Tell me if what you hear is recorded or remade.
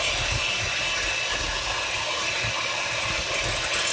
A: recorded